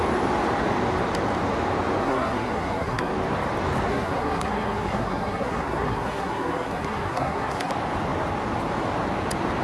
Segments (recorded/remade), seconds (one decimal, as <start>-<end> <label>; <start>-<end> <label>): 0.0-2.0 recorded; 2.0-3.1 remade; 3.1-3.9 recorded; 3.9-7.7 remade; 7.7-9.6 recorded